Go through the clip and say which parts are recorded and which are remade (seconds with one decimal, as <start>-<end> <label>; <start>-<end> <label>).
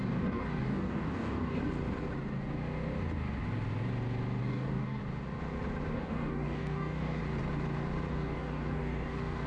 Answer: 0.0-1.6 remade; 1.6-4.4 recorded; 4.4-5.0 remade; 5.0-5.9 recorded; 5.9-7.2 remade; 7.2-8.1 recorded; 8.1-9.5 remade